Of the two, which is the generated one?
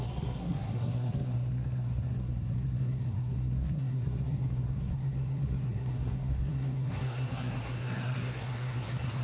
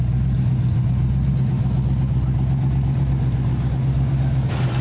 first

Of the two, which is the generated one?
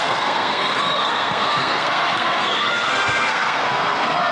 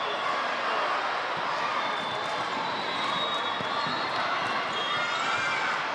first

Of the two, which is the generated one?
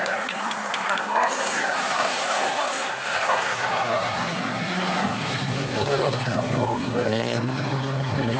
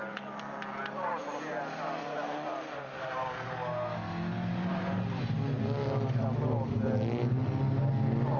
first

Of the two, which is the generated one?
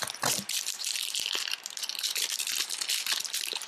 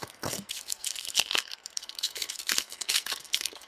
second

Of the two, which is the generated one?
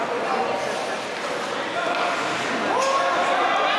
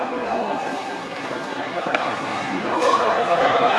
second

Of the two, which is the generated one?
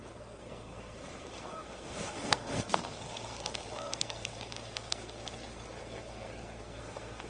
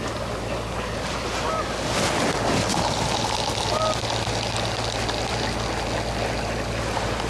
first